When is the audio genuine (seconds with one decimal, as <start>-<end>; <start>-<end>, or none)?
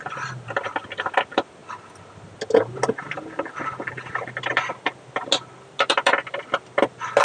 0.0-7.2